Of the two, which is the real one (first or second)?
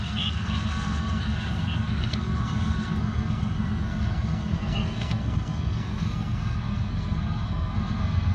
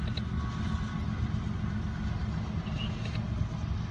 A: second